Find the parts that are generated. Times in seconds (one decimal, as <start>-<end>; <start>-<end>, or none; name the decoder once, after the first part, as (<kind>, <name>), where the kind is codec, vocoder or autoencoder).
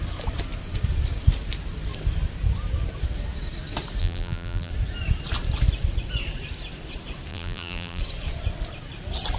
4.0-4.7 (vocoder, BigVGAN v2); 7.3-8.0